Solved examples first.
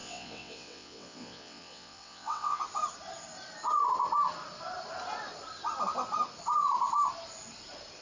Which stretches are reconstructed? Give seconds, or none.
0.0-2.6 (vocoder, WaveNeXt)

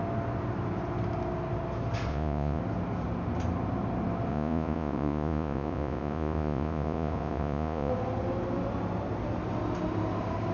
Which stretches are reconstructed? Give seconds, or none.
2.1-2.6 (vocoder, Vocos); 4.3-7.9

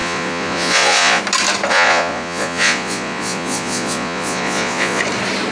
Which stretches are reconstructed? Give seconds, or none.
0.0-1.2 (vocoder, Vocos); 1.7-5.0

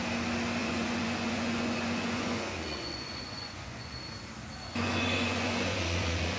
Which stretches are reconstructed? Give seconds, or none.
0.6-3.9 (vocoder, Vocos); 4.7-6.4

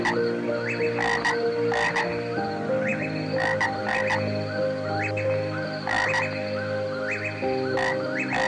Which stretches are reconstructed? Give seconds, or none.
none

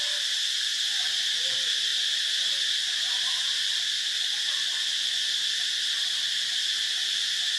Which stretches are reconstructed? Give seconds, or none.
none

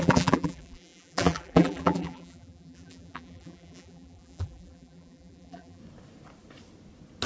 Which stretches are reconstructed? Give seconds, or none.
0.0-5.8 (vocoder, BigVGAN v2)